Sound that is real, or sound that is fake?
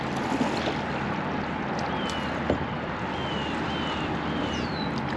real